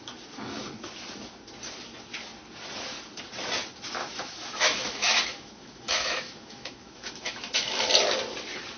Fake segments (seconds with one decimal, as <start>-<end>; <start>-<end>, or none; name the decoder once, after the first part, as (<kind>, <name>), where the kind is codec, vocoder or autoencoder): 4.0-7.9 (autoencoder, DAC-VAE)